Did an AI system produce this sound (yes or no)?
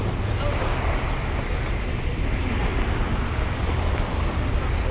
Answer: no